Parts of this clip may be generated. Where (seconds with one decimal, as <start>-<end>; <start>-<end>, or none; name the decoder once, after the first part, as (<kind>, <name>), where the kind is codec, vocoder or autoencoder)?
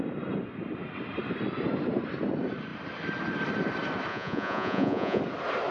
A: 4.1-5.2 (vocoder, Vocos)